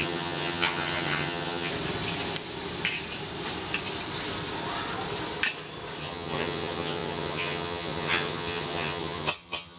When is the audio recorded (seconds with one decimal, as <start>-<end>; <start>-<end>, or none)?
1.7-6.0